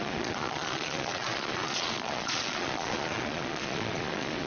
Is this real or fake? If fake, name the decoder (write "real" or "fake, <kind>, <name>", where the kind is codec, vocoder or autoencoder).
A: fake, vocoder, Vocos